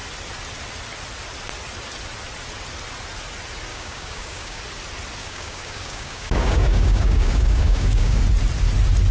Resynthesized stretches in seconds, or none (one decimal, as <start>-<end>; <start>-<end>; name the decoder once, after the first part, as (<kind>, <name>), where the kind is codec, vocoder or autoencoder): 3.7-4.6 (codec, DAC); 5.2-8.2